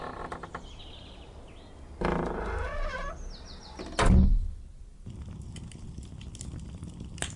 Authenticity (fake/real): real